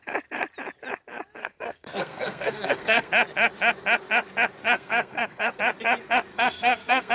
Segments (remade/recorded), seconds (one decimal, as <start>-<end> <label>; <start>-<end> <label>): 0.0-1.4 recorded; 1.4-3.1 remade; 3.1-4.6 recorded; 4.6-5.6 remade; 5.6-6.3 recorded; 6.3-7.1 remade